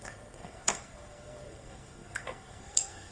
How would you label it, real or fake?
fake